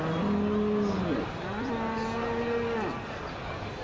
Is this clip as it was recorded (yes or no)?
yes